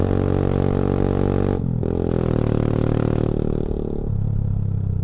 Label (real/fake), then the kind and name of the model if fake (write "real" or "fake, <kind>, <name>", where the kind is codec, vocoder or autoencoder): real